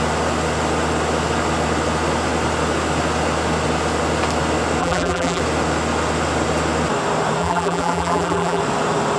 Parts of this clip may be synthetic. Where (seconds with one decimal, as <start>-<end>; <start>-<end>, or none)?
4.8-5.4; 7.4-8.6